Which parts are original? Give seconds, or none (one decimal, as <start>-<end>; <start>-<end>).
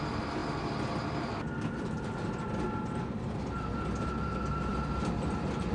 0.0-5.7